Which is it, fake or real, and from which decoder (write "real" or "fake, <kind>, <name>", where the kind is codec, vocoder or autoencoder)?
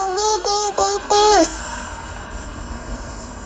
fake, codec, SNAC